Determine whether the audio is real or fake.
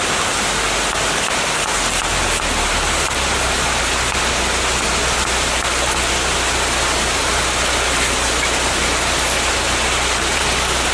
real